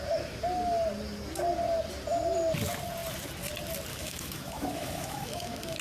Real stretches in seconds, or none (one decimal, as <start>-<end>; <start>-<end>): 0.0-3.9